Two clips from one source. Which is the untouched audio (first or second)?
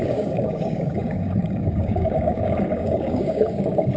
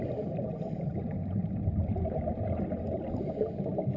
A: second